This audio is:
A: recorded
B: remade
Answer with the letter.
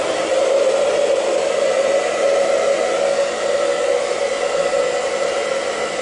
A